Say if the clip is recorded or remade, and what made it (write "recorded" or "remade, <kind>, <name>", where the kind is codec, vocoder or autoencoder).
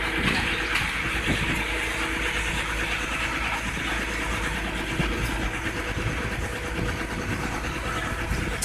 recorded